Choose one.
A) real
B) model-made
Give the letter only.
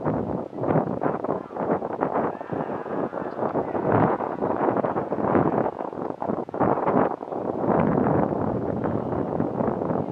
B